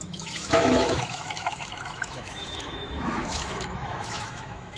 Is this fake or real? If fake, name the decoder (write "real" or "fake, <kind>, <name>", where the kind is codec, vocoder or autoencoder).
fake, autoencoder, DAC-VAE